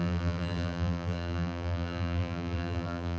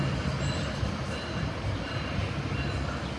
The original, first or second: second